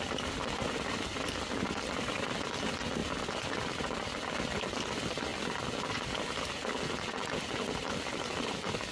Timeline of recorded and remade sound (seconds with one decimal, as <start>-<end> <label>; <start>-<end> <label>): 0.0-8.9 recorded

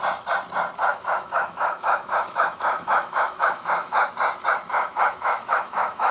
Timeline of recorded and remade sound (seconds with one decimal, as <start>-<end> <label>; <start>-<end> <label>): 0.0-0.9 recorded; 0.9-4.1 remade; 4.1-4.7 recorded; 4.7-6.1 remade